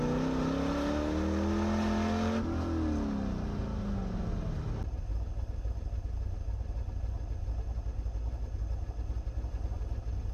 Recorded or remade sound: recorded